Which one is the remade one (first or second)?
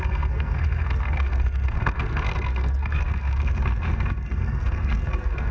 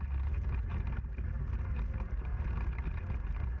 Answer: first